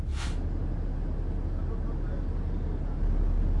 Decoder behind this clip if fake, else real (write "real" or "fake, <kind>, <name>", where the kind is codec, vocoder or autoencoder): real